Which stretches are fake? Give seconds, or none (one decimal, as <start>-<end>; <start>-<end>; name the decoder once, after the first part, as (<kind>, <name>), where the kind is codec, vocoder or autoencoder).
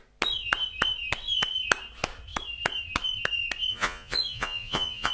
3.7-5.1 (vocoder, Vocos)